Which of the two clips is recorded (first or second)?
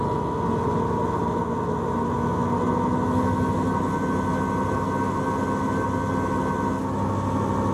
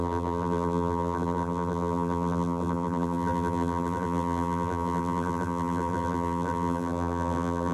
first